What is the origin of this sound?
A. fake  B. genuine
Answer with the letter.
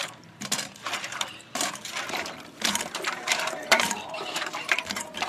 A